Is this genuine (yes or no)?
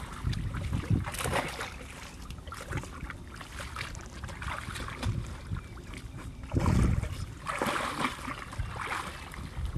yes